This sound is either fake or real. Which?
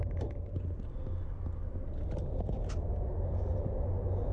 real